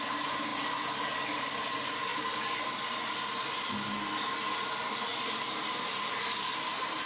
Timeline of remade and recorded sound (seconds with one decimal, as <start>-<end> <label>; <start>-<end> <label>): 0.0-7.1 recorded

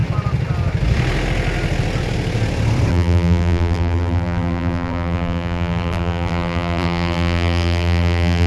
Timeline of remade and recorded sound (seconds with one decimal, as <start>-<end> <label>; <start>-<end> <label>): 0.0-2.9 recorded; 2.9-8.5 remade

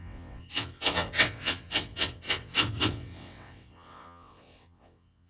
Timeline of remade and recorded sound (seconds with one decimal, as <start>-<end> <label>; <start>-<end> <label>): 0.0-5.3 remade

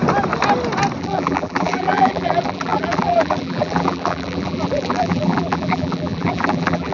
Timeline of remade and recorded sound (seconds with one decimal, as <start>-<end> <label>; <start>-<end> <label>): 0.0-1.0 recorded; 1.0-6.9 remade

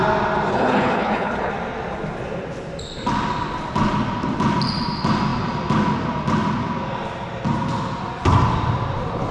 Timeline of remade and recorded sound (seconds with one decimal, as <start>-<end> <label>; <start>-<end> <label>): 0.0-0.5 recorded; 0.5-1.5 remade; 1.5-9.3 recorded

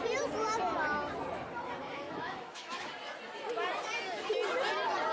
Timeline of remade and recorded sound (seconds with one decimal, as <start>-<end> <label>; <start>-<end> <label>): 0.0-1.8 recorded; 1.8-2.9 remade; 2.9-5.1 recorded

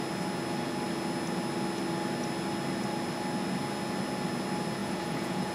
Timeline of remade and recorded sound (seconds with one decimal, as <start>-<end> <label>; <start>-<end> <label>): 0.0-4.8 recorded; 4.8-5.5 remade